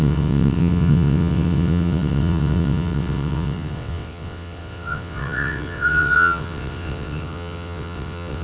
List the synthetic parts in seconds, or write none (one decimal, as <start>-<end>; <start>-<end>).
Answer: 0.0-8.4